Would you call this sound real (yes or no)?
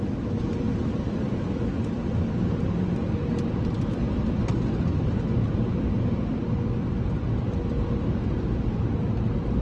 yes